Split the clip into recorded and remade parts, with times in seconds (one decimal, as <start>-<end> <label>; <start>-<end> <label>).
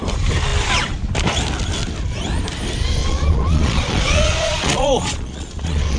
0.0-3.0 recorded; 3.0-6.0 remade